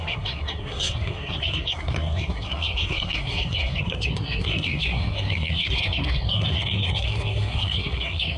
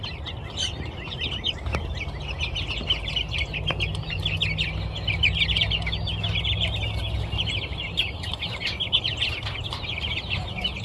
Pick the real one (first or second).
second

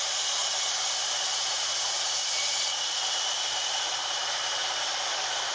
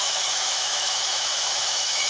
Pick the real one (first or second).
first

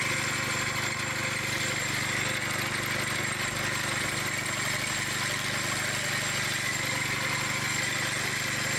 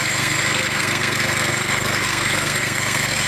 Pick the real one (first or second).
first